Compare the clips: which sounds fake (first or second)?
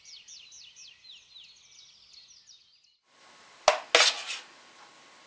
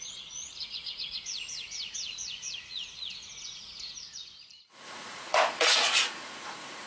second